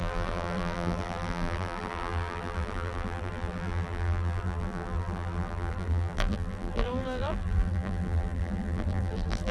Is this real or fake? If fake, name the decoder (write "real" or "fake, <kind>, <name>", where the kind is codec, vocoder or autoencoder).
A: fake, vocoder, BigVGAN v2